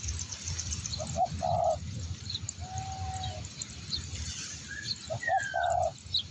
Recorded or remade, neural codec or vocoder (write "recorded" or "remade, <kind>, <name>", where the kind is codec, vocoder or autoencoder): recorded